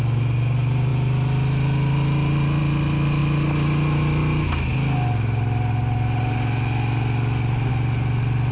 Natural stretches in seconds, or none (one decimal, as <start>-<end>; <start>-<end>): 0.0-8.5

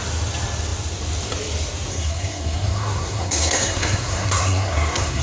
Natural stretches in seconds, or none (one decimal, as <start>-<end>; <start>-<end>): 0.0-1.9

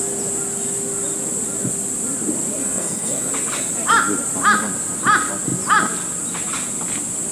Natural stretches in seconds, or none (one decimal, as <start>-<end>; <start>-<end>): 0.0-2.6; 3.3-7.3

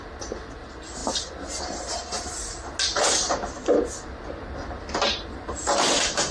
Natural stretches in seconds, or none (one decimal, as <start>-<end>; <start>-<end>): 0.0-6.3